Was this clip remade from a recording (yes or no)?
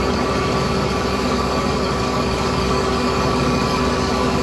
yes